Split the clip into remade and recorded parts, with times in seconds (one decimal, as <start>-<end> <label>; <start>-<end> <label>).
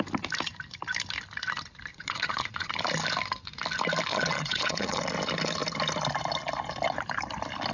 0.0-1.9 recorded; 1.9-2.7 remade; 2.7-4.1 recorded; 4.1-5.0 remade; 5.0-7.7 recorded